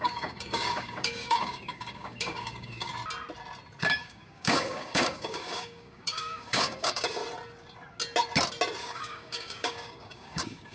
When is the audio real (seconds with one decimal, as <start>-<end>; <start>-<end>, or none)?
2.9-3.8; 7.2-8.8